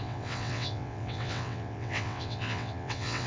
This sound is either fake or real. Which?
fake